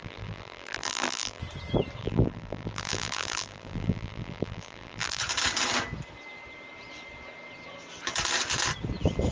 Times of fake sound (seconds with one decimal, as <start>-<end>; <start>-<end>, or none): 0.0-1.4; 2.0-5.2

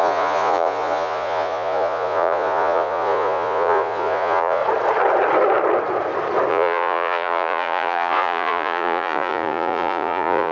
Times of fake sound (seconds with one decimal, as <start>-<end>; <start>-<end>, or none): 0.0-4.6; 6.5-10.5